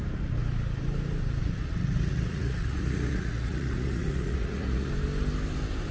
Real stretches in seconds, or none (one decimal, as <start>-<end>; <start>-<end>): 0.0-1.4; 4.9-5.9